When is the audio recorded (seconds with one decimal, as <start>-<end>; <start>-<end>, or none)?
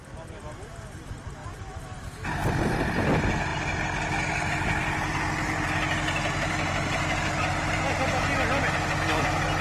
0.0-9.6